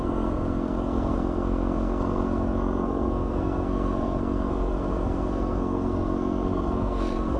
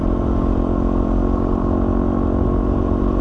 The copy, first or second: first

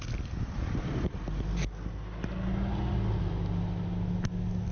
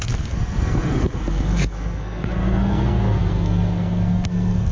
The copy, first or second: second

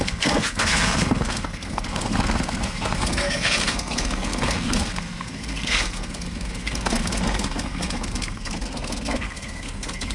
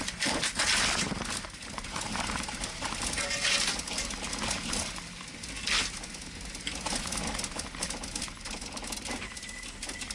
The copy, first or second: first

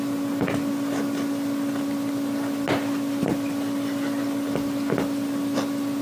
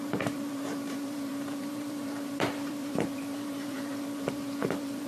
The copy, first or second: second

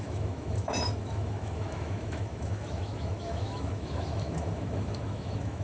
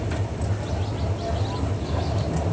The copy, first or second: first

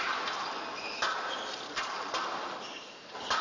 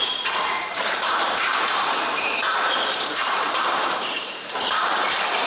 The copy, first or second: second